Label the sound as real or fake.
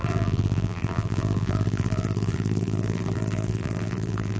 fake